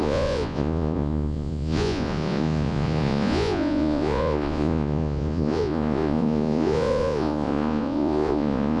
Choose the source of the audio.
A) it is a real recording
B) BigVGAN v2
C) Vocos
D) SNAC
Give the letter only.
C